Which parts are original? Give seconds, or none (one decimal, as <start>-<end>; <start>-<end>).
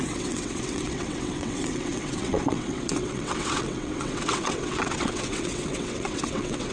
none